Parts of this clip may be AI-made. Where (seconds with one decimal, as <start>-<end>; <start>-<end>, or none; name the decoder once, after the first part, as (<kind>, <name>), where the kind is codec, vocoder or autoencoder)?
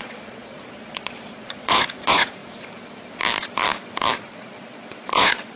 0.0-2.4 (vocoder, Vocos); 4.2-5.6